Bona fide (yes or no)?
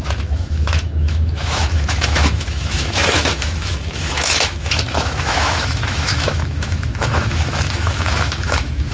no